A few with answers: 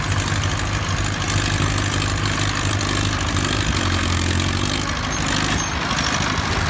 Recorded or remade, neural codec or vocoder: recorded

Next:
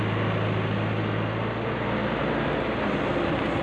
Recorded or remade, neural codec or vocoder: recorded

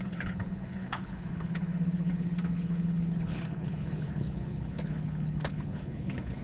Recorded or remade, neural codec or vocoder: remade, codec, HILCodec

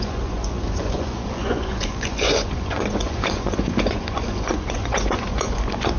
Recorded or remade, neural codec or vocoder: remade, vocoder, Vocos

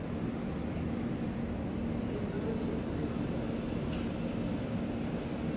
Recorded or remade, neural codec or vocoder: recorded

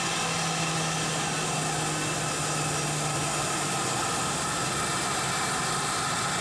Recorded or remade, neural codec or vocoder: recorded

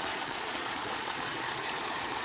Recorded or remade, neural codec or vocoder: remade, vocoder, Vocos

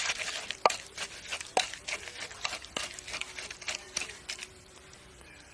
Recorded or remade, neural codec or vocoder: recorded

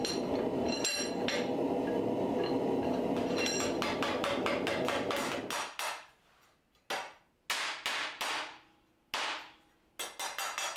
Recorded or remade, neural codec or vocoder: recorded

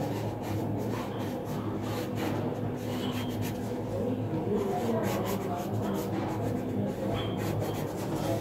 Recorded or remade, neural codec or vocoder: recorded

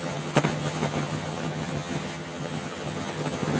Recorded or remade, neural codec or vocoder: remade, vocoder, HiFi-GAN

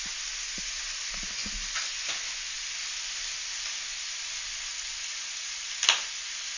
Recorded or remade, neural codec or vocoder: recorded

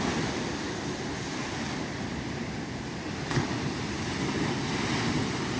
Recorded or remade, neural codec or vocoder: recorded